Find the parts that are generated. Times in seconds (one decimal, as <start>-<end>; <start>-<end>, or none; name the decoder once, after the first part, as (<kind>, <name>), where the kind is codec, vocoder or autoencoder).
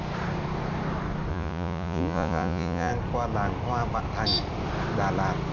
1.3-2.9 (vocoder, Vocos)